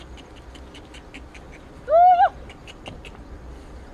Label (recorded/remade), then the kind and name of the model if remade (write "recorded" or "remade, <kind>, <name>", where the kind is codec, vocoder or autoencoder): recorded